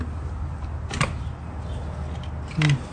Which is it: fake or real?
real